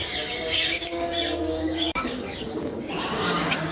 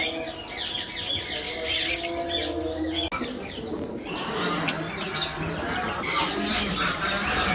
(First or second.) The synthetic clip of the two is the first